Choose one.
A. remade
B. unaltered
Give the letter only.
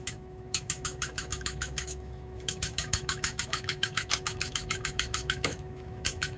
A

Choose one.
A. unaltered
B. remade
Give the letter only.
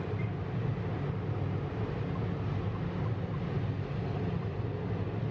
A